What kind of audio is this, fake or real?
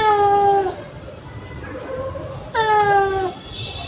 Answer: real